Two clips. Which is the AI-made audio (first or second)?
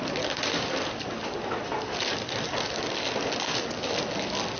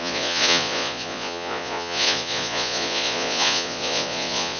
second